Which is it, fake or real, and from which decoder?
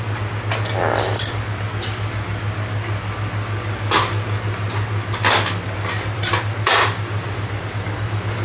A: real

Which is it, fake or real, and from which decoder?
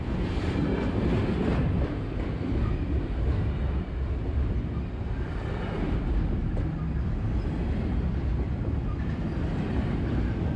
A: real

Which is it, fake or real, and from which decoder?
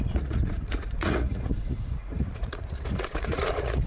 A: fake, vocoder, Vocos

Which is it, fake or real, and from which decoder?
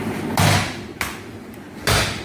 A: real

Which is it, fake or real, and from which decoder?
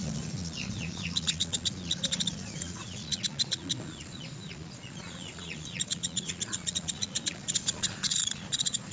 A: fake, vocoder, Vocos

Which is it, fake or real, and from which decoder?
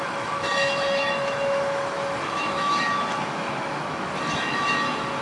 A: fake, autoencoder, DAC-VAE